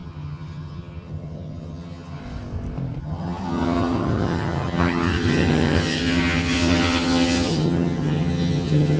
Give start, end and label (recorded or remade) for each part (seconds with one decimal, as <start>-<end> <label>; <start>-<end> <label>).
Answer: 0.0-2.2 remade; 2.2-3.0 recorded; 3.0-9.0 remade